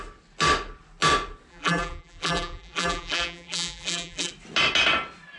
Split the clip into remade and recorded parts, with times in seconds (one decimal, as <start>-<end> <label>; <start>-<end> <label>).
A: 0.0-1.5 recorded; 1.5-4.3 remade; 4.3-5.4 recorded